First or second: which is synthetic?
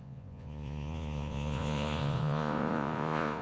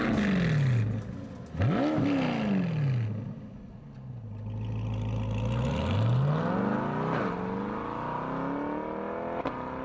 first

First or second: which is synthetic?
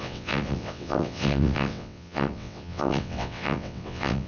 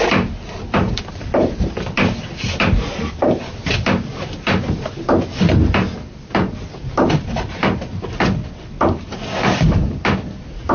first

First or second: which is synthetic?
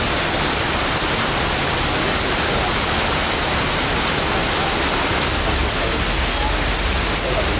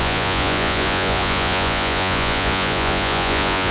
second